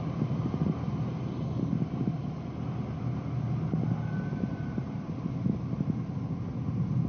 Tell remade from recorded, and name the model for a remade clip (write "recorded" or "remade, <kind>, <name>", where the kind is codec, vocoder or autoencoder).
recorded